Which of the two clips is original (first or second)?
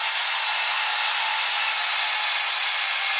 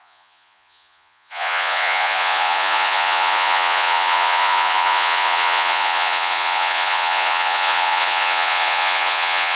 first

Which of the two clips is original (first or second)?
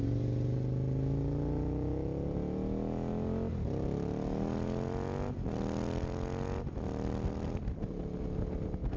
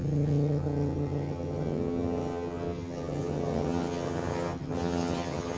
first